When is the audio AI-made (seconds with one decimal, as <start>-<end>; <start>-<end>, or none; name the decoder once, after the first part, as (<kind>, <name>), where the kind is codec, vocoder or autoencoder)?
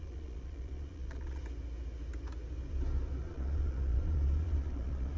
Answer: 0.0-1.4 (vocoder, Vocos); 3.2-5.2